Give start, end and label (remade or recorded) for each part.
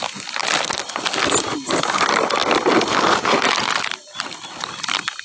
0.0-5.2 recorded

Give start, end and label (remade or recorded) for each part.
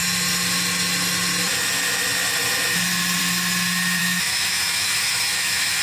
0.0-4.0 recorded; 4.0-5.8 remade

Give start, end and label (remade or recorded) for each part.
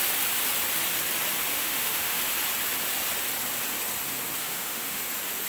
0.0-1.5 recorded; 1.5-2.2 remade; 2.2-4.4 recorded; 4.4-5.0 remade; 5.0-5.5 recorded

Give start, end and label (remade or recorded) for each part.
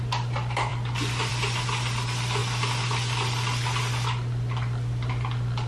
0.0-5.7 recorded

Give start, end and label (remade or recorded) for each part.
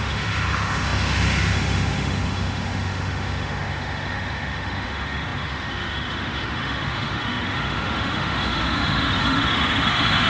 0.0-10.3 remade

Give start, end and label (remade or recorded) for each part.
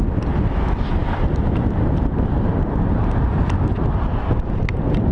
0.0-5.1 recorded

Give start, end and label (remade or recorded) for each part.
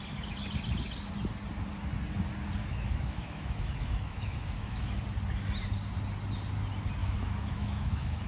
0.0-2.6 recorded; 2.6-5.0 remade; 5.0-7.0 recorded; 7.0-8.3 remade